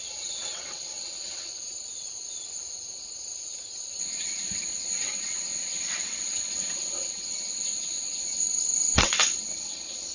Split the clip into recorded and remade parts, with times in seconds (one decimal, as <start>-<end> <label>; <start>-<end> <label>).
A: 0.0-1.5 remade; 1.5-4.0 recorded; 4.0-8.4 remade; 8.4-9.0 recorded; 9.0-10.1 remade